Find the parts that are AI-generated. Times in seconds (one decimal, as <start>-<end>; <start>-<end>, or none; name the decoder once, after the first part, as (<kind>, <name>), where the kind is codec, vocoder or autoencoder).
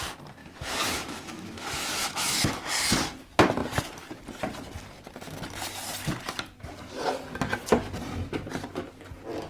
0.4-2.7 (autoencoder, DAC-VAE)